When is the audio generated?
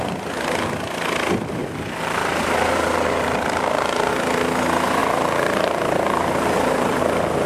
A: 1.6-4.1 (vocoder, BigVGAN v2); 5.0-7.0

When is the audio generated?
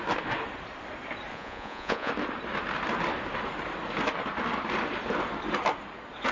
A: 1.3-2.1 (vocoder, Vocos)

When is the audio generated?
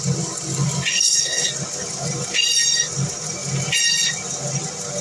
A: 0.9-1.5 (codec, HILCodec)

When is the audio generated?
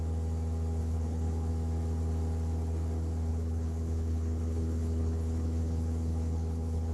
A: 0.8-1.5 (codec, HILCodec); 3.3-6.9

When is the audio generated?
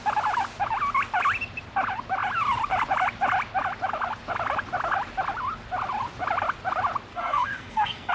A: 7.1-8.1 (codec, SNAC)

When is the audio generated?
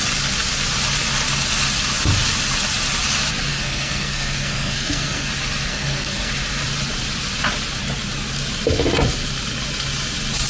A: 3.5-5.3 (codec, SNAC); 5.7-6.3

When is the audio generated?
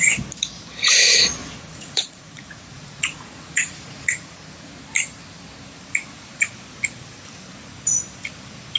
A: 1.4-4.8 (vocoder, Vocos)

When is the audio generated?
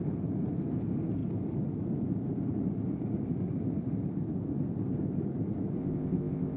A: 5.8-6.6 (codec, ZipCodec)